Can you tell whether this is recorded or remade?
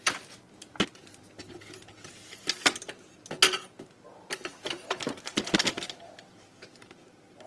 recorded